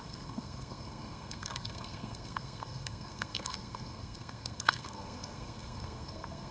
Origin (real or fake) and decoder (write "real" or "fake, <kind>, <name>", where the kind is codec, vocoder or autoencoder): fake, codec, SNAC